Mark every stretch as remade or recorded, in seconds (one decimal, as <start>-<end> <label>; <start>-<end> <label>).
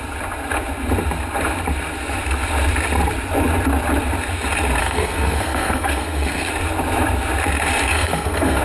0.0-4.8 recorded; 4.8-6.5 remade; 6.5-7.9 recorded; 7.9-8.6 remade